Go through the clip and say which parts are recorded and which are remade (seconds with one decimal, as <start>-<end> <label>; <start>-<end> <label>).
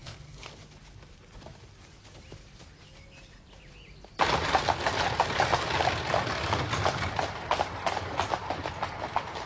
0.0-0.5 remade; 0.5-9.5 recorded